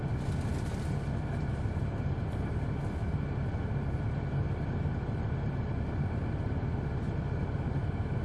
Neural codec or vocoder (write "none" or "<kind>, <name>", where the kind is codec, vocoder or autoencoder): none